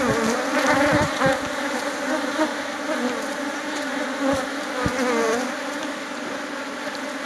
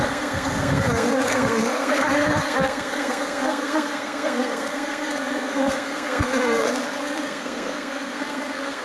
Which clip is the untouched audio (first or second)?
first